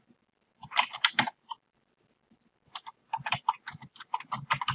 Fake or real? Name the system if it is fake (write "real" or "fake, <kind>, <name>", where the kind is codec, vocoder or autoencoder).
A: fake, vocoder, BigVGAN v2